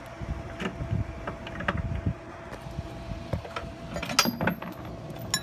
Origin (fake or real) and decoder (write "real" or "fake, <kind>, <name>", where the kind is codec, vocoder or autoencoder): real